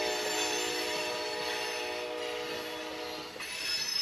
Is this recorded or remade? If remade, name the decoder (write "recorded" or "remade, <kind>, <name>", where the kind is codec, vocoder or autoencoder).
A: recorded